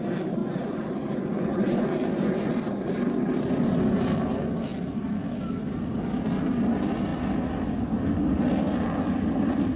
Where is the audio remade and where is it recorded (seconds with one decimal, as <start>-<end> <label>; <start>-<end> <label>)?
0.0-0.4 recorded; 0.4-2.5 remade; 2.5-9.8 recorded